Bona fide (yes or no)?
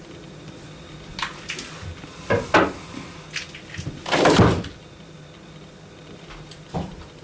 yes